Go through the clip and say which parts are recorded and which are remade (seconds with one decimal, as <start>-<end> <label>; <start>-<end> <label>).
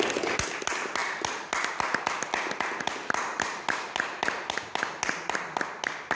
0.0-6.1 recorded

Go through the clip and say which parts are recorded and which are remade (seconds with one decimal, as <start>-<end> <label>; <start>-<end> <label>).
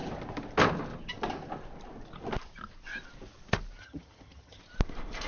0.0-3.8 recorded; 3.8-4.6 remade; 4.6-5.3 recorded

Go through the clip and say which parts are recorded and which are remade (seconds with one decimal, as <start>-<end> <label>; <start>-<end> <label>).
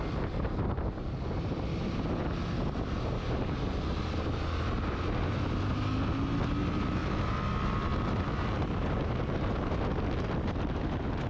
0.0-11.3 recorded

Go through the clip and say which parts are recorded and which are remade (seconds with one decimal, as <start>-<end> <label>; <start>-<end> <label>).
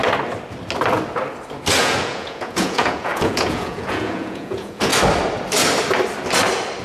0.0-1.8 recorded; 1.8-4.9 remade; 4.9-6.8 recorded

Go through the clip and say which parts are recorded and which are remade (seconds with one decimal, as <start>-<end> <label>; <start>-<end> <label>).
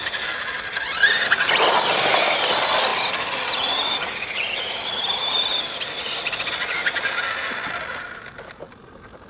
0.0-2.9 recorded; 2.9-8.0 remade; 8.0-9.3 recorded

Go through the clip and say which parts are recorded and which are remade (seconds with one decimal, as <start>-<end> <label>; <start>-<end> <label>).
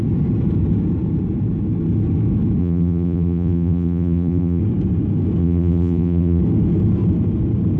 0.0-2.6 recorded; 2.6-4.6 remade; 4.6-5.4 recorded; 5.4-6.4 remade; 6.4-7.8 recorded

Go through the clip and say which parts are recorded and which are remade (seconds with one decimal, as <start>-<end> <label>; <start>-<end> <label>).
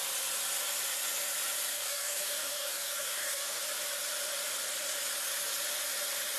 0.0-1.7 recorded; 1.7-3.6 remade; 3.6-6.4 recorded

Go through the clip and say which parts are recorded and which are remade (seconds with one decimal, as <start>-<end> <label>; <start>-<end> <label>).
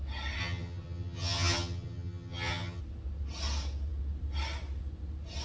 0.0-0.4 recorded; 0.4-2.8 remade; 2.8-5.4 recorded